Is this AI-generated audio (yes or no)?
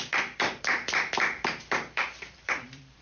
yes